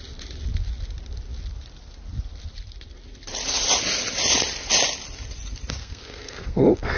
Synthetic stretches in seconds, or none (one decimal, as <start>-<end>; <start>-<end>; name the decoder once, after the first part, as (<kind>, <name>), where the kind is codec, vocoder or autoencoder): 5.8-7.0 (codec, SNAC)